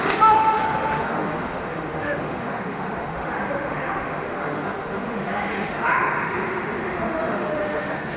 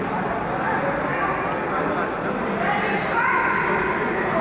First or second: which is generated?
first